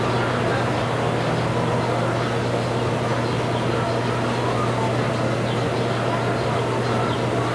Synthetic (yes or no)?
no